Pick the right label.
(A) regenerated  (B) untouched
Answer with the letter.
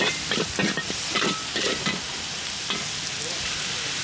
B